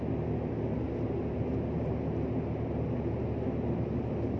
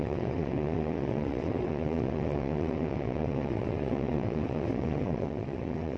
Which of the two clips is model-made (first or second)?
second